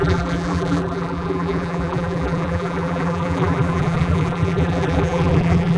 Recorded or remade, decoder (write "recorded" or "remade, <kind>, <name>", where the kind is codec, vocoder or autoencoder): remade, vocoder, BigVGAN v2